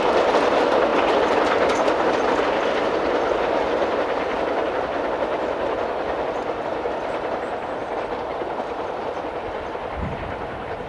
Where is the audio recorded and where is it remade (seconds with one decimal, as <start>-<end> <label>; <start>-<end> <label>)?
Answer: 0.0-10.9 remade